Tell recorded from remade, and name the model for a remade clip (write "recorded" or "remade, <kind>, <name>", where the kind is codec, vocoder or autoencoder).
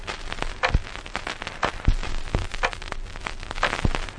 recorded